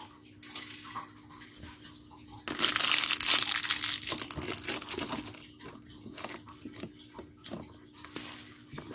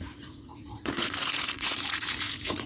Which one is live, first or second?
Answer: first